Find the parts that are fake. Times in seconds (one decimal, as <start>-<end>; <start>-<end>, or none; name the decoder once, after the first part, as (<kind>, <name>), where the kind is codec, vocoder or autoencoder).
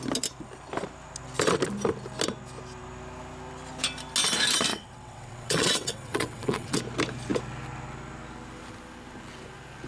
4.7-6.8 (vocoder, WaveNeXt)